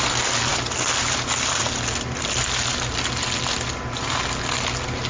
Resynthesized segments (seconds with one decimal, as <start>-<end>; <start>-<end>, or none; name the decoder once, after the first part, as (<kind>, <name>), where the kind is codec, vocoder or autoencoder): none